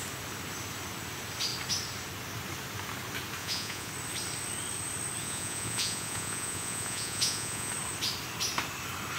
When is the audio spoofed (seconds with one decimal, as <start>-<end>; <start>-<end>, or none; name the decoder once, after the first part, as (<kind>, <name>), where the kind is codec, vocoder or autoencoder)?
3.4-3.9 (vocoder, Vocos); 5.2-7.7